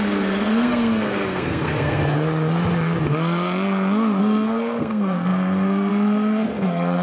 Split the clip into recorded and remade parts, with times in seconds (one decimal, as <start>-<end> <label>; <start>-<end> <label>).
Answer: 0.0-2.0 remade; 2.0-4.2 recorded; 4.2-7.0 remade